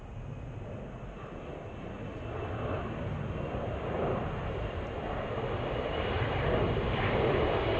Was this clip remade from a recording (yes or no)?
no